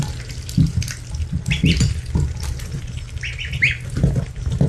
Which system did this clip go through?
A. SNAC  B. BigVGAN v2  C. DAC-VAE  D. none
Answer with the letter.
D